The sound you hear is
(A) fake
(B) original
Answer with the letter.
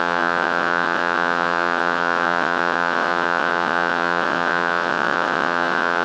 A